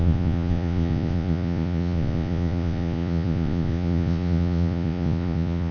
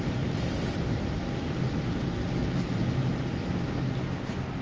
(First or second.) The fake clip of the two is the first